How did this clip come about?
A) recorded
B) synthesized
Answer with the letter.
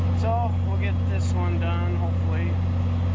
A